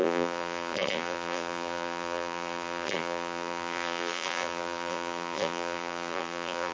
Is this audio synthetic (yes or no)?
yes